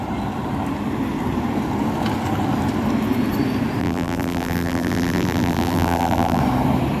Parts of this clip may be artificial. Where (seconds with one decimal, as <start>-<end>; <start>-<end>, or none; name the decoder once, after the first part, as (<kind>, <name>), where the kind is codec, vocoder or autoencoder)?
3.8-6.4 (vocoder, BigVGAN v2)